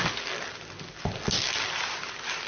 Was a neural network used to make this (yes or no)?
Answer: no